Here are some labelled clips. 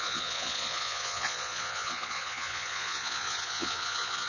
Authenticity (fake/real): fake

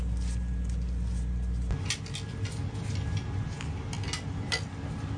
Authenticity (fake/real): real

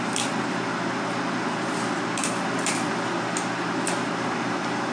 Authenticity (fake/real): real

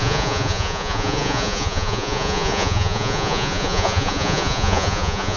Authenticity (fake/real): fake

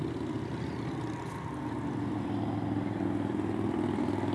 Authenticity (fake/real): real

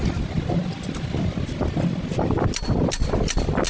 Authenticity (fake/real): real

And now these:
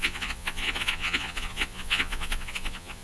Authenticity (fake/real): fake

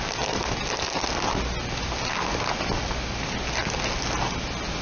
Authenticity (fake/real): real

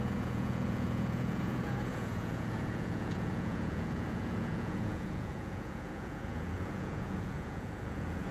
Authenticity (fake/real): fake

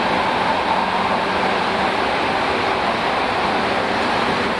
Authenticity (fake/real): real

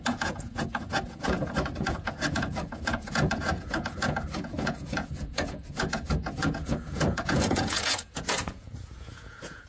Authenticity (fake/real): fake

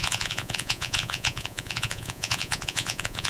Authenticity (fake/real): fake